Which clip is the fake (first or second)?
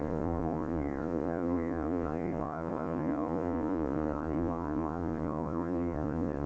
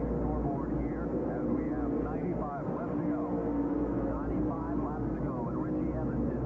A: first